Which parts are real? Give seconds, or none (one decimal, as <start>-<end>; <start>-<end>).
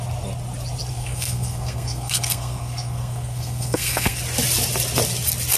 0.0-0.9; 4.2-5.6